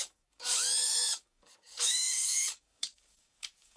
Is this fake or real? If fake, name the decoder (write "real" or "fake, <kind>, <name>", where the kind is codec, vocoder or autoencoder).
fake, codec, DAC